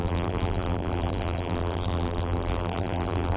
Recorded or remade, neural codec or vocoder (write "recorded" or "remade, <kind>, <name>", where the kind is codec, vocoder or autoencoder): remade, vocoder, BigVGAN v2